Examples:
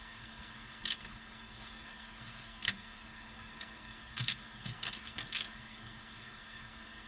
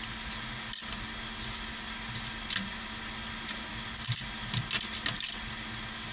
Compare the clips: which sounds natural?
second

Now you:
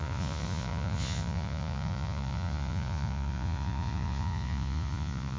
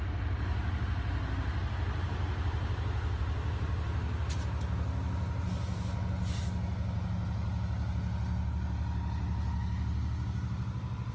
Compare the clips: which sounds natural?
second